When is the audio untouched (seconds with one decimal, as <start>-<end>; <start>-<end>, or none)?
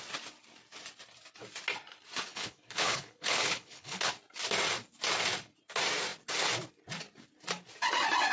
0.0-2.3; 4.1-8.3